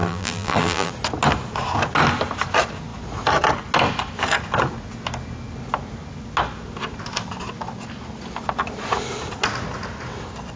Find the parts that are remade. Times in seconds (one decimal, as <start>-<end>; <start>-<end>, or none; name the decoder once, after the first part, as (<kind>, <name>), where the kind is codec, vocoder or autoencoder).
0.0-0.9 (vocoder, BigVGAN v2)